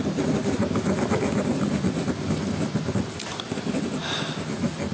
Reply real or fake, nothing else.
real